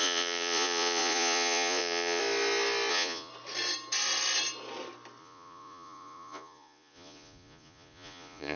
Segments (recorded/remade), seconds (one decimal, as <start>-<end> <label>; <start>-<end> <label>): 0.0-2.2 remade; 2.2-2.9 recorded; 2.9-3.3 remade; 3.3-5.2 recorded; 5.2-8.6 remade